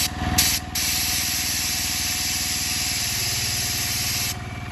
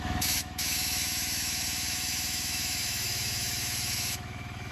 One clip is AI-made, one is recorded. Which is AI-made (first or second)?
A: second